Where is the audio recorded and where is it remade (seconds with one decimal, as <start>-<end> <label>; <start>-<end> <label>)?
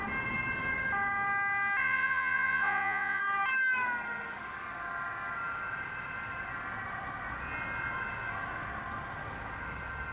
0.0-1.8 recorded; 1.8-3.2 remade; 3.2-10.1 recorded